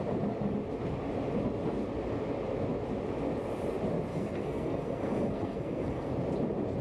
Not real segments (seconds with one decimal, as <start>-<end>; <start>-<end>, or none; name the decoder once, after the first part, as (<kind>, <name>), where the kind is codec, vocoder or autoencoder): 4.1-6.1 (codec, SNAC)